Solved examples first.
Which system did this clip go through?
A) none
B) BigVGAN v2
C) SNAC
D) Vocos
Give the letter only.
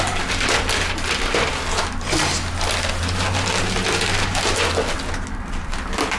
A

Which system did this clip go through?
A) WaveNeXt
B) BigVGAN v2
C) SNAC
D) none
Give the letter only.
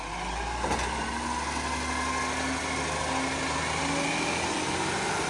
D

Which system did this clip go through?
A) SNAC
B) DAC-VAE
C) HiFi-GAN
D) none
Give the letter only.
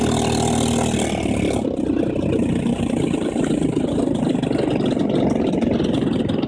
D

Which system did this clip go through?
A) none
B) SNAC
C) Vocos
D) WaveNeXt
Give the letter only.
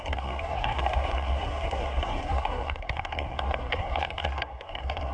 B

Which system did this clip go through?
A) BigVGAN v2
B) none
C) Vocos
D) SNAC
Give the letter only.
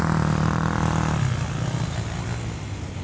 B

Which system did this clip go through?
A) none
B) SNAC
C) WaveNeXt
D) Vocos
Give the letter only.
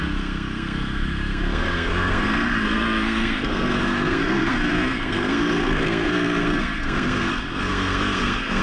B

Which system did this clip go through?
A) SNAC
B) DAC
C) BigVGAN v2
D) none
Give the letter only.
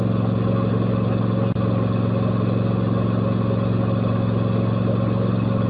D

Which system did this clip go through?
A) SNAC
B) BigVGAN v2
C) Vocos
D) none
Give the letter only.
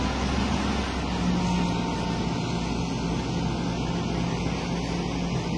D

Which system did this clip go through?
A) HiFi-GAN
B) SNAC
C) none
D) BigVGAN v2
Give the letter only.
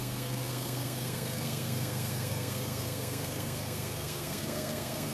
B